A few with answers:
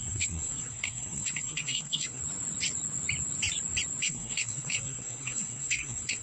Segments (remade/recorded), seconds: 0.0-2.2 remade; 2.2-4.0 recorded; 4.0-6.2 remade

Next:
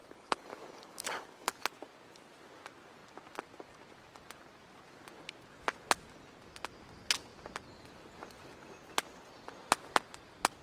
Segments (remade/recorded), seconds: 0.0-1.5 remade; 1.5-10.6 recorded

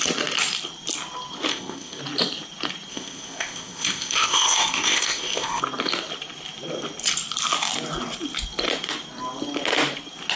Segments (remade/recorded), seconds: 0.0-1.5 recorded; 1.5-2.0 remade; 2.0-2.9 recorded; 2.9-5.6 remade; 5.6-10.4 recorded

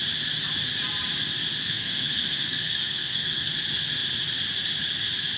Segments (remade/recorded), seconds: 0.0-1.6 recorded; 1.6-3.5 remade; 3.5-5.4 recorded